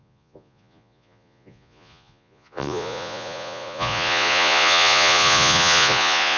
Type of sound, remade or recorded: remade